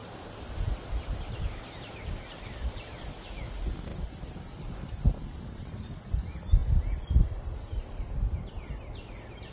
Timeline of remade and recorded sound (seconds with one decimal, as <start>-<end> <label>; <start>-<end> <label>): 0.0-2.1 remade; 2.1-3.9 recorded; 3.9-6.1 remade; 6.1-6.6 recorded; 6.6-8.5 remade; 8.5-9.5 recorded